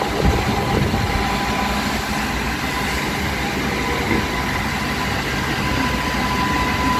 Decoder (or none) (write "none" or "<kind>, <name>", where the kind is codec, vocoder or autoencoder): none